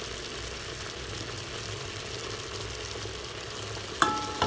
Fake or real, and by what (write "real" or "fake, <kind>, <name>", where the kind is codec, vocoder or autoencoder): real